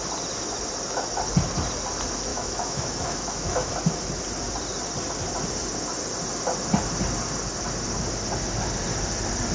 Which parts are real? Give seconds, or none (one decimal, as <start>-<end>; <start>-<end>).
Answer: 0.0-2.3; 3.7-9.5